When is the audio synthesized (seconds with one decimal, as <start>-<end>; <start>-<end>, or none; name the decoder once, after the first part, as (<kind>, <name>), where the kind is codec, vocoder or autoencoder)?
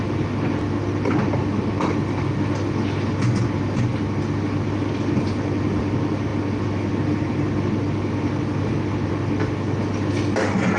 none